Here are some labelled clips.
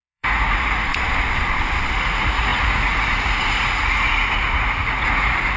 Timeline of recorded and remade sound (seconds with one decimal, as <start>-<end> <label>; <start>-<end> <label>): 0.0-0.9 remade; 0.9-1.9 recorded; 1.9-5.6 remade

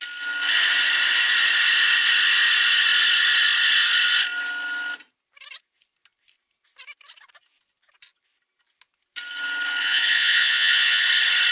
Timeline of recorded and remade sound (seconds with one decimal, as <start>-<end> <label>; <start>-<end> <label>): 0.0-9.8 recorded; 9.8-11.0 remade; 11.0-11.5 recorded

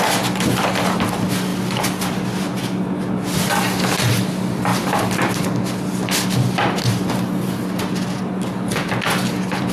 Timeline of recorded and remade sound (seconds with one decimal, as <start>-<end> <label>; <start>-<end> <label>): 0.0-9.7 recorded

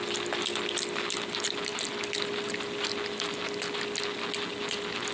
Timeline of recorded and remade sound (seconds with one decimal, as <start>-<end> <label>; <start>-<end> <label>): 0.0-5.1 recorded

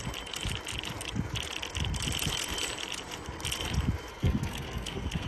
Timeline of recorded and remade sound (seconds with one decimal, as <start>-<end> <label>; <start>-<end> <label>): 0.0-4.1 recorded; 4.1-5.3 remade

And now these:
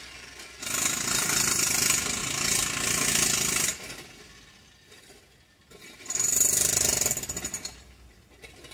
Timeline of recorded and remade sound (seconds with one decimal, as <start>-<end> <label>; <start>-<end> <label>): 0.0-8.7 recorded

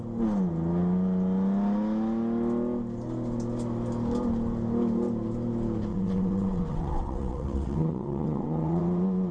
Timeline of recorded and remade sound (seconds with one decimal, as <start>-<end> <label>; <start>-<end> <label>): 0.0-5.9 recorded; 5.9-8.8 remade; 8.8-9.3 recorded

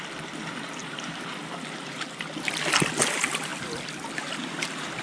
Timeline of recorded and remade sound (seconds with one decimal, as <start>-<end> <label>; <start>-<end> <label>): 0.0-3.5 remade; 3.5-4.2 recorded; 4.2-5.0 remade